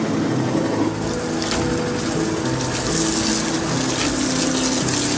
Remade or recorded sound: recorded